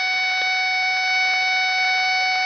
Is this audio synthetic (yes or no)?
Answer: no